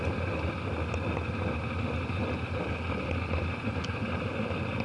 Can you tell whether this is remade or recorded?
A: recorded